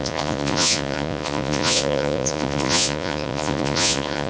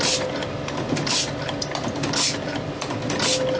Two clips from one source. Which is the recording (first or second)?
second